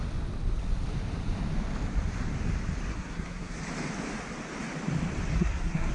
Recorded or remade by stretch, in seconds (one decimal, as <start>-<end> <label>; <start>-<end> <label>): 0.0-2.9 recorded; 2.9-3.6 remade; 3.6-5.3 recorded; 5.3-5.9 remade